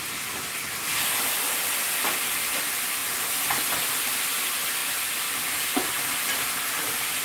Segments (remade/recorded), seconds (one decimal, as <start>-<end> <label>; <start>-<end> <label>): 0.0-3.0 remade; 3.0-4.0 recorded; 4.0-4.8 remade; 4.8-6.5 recorded; 6.5-7.2 remade